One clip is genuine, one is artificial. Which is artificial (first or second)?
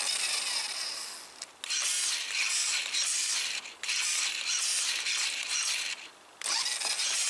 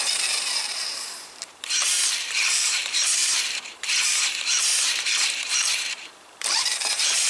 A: second